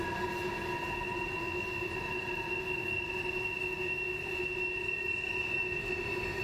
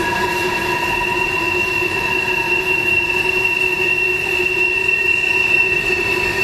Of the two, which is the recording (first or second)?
first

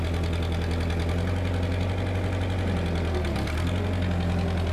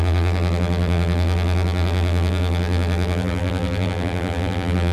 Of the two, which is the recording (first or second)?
first